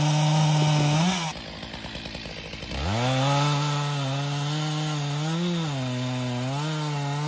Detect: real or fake real